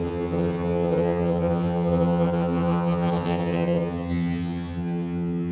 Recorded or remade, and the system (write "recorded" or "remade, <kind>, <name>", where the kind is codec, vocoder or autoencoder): remade, vocoder, HiFi-GAN